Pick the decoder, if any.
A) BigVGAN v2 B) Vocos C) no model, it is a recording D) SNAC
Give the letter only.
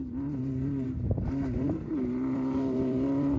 A